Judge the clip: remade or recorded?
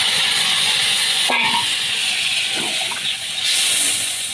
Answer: remade